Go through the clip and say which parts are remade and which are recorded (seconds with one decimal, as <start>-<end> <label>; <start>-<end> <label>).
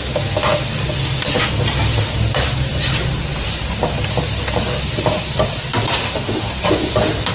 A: 0.0-6.0 recorded; 6.0-6.5 remade; 6.5-7.3 recorded